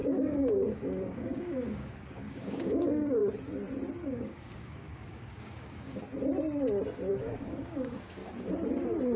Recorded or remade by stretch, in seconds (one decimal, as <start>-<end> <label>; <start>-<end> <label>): 0.0-3.2 remade; 3.2-4.1 recorded; 4.1-6.0 remade; 6.0-7.1 recorded; 7.1-8.2 remade; 8.2-9.2 recorded

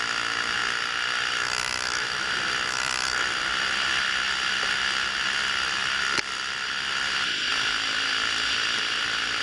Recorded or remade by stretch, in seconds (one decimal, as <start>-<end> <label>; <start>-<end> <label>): 0.0-9.4 recorded

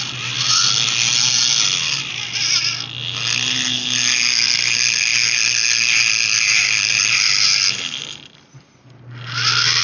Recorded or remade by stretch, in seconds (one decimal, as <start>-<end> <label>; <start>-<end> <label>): 0.0-9.8 recorded

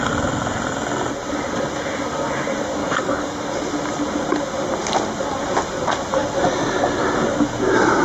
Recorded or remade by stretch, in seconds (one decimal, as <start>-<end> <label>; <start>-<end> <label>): 0.0-2.8 recorded; 2.8-3.5 remade; 3.5-8.0 recorded